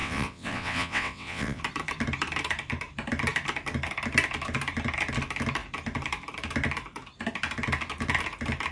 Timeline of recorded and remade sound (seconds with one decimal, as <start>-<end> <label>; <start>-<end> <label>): 0.0-1.6 remade; 1.6-8.7 recorded